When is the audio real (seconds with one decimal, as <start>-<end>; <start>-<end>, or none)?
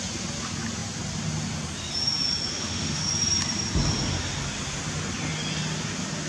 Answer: 0.0-2.5; 3.1-6.3